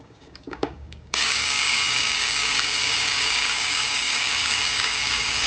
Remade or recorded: remade